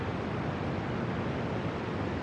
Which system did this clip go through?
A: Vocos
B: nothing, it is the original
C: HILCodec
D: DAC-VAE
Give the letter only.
B